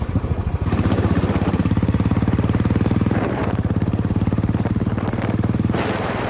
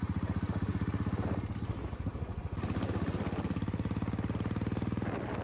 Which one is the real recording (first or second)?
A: second